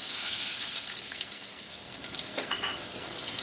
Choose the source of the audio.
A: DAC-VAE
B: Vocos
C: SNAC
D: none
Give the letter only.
C